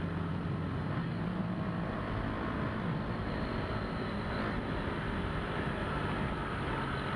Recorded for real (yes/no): yes